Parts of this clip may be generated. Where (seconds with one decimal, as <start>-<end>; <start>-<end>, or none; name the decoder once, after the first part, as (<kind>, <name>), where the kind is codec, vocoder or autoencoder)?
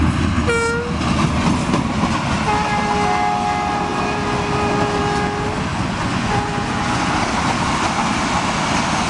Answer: 5.7-7.1 (vocoder, Vocos)